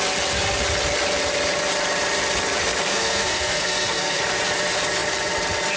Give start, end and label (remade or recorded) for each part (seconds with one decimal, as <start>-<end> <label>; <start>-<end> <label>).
0.0-2.9 recorded; 2.9-4.2 remade; 4.2-5.8 recorded

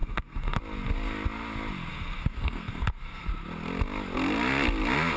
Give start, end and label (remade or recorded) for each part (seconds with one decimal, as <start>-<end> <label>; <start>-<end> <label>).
0.0-0.6 remade; 0.6-1.9 recorded; 1.9-3.3 remade; 3.3-5.2 recorded